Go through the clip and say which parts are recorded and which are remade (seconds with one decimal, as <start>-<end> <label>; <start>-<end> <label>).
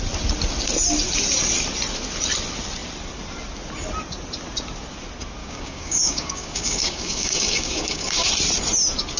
0.0-5.4 recorded; 5.4-8.3 remade; 8.3-9.2 recorded